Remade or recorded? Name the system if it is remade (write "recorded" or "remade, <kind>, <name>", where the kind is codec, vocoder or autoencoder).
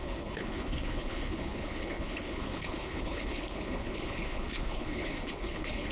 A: remade, codec, HILCodec